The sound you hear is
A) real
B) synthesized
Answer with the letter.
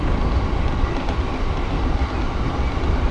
A